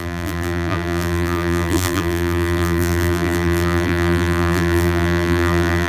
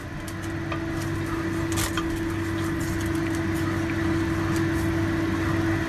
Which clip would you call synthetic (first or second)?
first